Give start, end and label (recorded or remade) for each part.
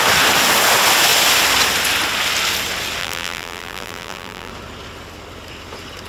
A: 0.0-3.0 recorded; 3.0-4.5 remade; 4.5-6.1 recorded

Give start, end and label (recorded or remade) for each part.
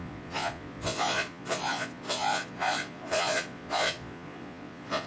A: 0.0-5.1 remade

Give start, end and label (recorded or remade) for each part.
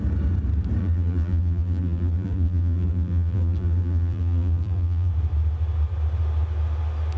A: 0.0-0.8 recorded; 0.8-5.1 remade; 5.1-7.2 recorded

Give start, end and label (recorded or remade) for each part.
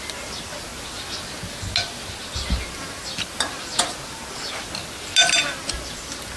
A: 0.0-6.4 recorded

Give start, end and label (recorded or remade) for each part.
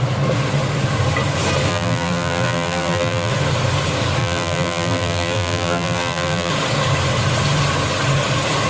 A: 0.0-1.7 recorded; 1.7-3.3 remade; 3.3-4.2 recorded; 4.2-6.5 remade; 6.5-8.7 recorded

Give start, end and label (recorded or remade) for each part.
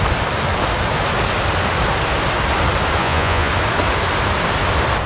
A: 0.0-3.0 recorded; 3.0-3.5 remade; 3.5-5.1 recorded